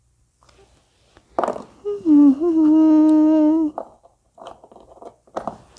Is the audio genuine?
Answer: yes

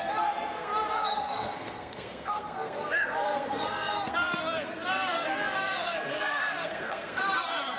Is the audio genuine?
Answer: no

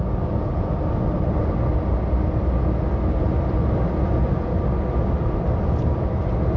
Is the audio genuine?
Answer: yes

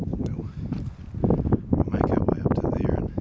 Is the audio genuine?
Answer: yes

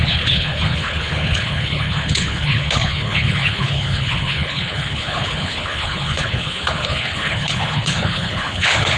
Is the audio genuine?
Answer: no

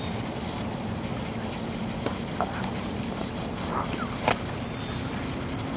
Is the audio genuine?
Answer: yes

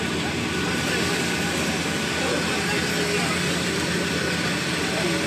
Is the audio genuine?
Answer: yes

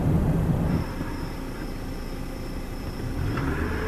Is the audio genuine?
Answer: no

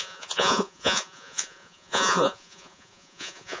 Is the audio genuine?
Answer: no